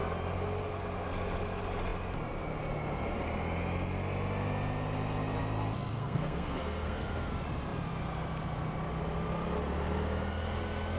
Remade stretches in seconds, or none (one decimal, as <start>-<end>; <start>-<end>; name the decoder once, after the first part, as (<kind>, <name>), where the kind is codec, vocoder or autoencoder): 5.9-7.3 (codec, SNAC)